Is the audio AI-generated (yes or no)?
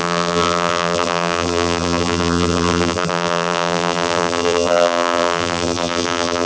yes